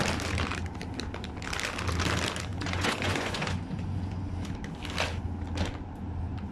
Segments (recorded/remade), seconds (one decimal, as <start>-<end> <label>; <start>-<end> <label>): 0.0-2.5 recorded; 2.5-4.5 remade; 4.5-6.5 recorded